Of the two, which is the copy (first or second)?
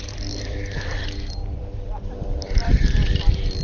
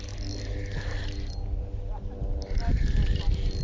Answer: first